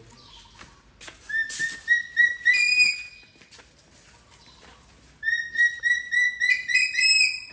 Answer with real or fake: real